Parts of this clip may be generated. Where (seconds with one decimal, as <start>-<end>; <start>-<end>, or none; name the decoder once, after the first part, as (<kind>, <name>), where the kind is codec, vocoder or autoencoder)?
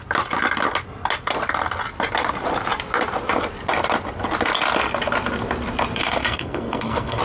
6.0-7.2 (codec, SNAC)